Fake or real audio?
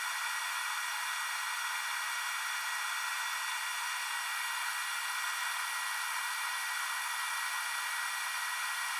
real